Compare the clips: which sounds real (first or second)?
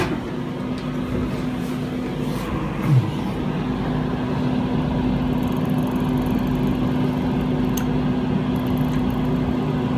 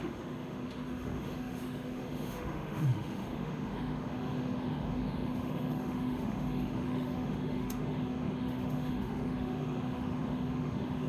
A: first